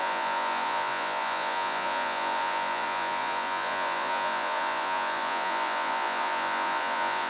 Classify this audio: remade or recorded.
remade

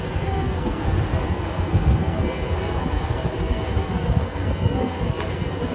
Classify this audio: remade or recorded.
remade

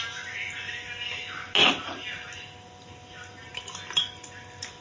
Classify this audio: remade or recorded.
recorded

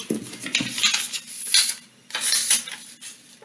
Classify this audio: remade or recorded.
recorded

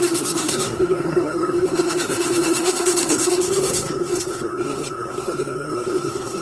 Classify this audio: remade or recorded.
remade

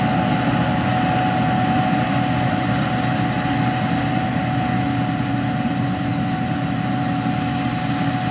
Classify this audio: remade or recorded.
recorded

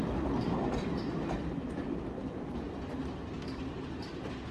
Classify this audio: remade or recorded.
recorded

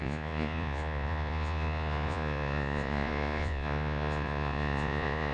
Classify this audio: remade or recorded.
remade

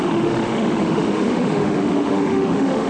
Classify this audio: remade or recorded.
remade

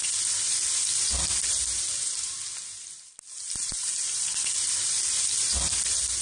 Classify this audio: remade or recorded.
recorded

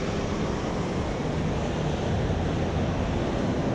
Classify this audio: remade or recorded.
recorded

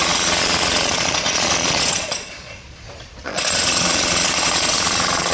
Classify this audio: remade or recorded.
remade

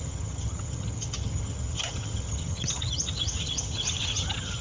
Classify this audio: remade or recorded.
remade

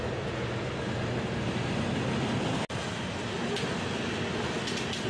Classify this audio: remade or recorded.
recorded